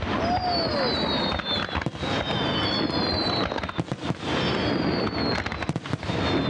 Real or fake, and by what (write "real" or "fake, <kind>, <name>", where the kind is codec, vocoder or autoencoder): real